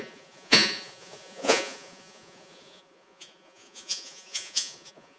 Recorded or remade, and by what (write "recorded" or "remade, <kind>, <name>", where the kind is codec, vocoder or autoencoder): remade, vocoder, Vocos